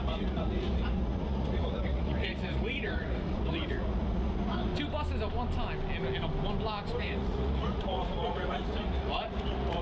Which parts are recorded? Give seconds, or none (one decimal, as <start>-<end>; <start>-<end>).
4.7-7.0